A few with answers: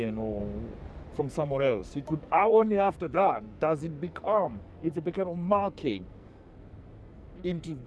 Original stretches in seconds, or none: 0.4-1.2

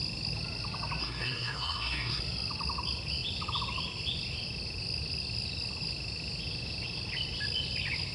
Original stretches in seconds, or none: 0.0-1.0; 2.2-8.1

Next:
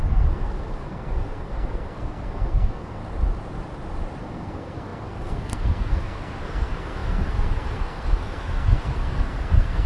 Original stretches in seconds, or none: 3.0-4.2

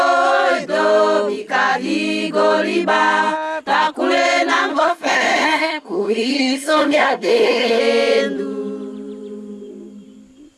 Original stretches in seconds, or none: 0.0-4.7; 7.8-10.6

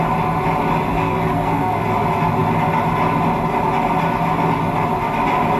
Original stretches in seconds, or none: 0.0-0.9; 1.8-5.6

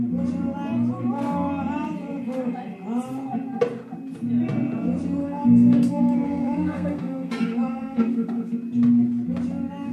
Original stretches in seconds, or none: 0.0-5.2; 8.5-9.9

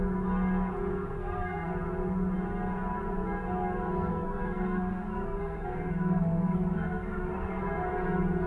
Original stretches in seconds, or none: 0.0-0.9; 1.7-4.1; 7.6-8.5